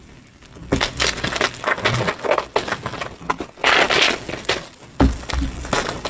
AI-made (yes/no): no